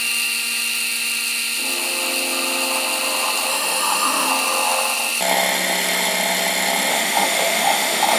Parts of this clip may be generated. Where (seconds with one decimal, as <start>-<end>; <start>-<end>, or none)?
3.5-4.3; 6.9-8.2